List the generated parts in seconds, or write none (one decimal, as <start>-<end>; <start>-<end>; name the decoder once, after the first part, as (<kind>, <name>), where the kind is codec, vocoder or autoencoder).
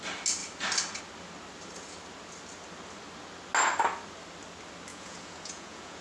4.9-6.0 (vocoder, Vocos)